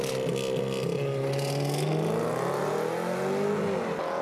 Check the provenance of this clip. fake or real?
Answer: real